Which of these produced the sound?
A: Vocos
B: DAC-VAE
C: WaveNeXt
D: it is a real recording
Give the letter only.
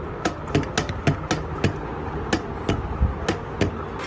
D